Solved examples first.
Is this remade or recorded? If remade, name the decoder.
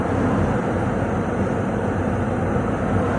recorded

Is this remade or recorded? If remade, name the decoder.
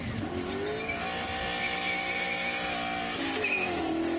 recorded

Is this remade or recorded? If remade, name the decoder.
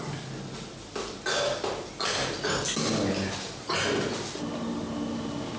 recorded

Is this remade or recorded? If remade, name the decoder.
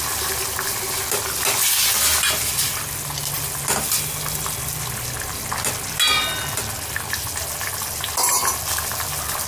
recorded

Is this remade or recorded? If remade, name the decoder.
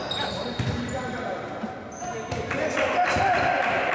recorded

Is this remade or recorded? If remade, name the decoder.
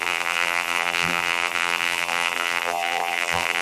remade, vocoder, BigVGAN v2